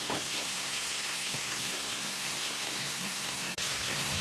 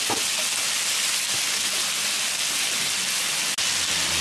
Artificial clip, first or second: first